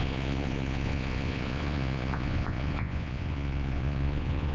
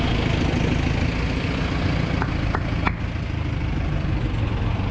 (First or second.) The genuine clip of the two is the second